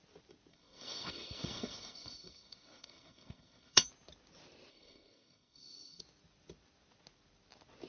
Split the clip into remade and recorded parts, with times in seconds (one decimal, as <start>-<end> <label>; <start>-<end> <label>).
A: 0.0-0.5 recorded; 0.5-3.9 remade; 3.9-4.7 recorded; 4.7-6.0 remade; 6.0-7.9 recorded